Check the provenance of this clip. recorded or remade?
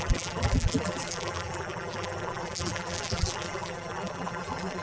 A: remade